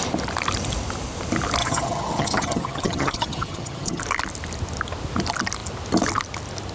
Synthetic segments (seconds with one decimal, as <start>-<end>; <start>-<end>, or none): 1.6-4.0